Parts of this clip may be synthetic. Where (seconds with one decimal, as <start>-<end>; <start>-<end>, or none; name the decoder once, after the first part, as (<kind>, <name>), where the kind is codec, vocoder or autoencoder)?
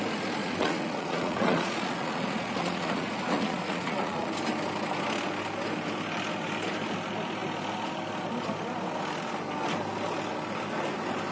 0.4-4.3 (vocoder, Vocos)